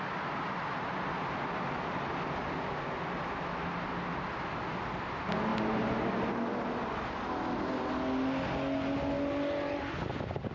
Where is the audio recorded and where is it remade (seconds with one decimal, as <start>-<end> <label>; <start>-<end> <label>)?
0.0-10.5 recorded